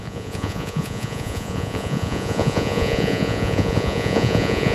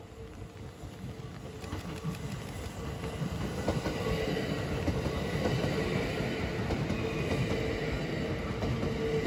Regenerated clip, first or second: first